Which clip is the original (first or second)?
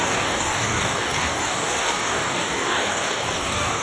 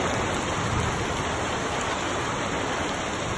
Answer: second